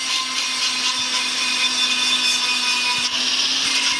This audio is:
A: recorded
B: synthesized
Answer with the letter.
A